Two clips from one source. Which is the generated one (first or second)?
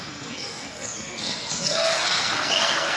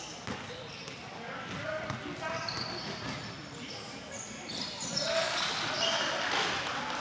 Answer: first